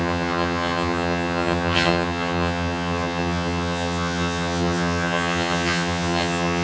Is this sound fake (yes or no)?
yes